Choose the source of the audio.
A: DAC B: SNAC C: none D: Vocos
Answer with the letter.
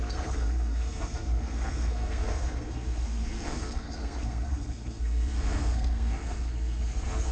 B